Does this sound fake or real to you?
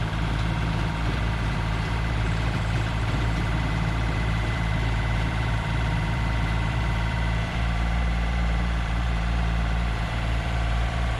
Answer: fake